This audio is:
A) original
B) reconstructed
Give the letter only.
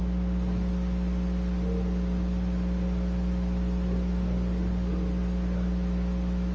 A